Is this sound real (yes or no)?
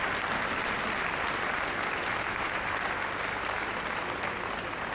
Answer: yes